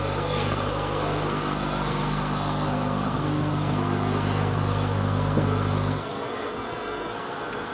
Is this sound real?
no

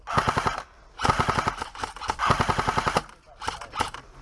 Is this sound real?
yes